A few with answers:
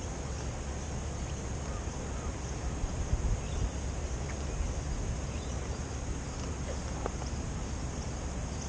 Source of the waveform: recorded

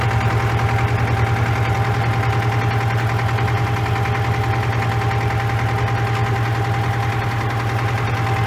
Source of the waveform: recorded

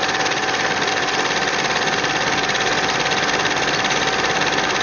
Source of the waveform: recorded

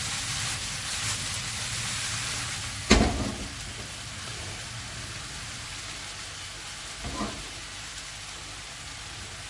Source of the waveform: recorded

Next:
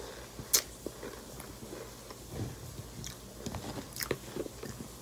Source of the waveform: recorded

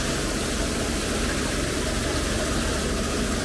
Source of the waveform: recorded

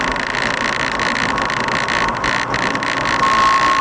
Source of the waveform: recorded